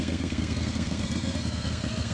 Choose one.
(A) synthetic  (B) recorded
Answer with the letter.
A